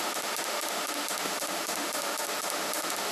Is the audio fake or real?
fake